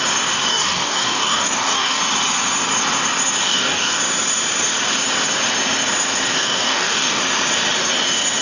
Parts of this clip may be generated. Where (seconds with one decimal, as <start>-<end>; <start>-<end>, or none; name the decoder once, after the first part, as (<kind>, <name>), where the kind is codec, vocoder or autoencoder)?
0.5-2.0 (codec, DAC); 3.4-4.0; 6.4-7.2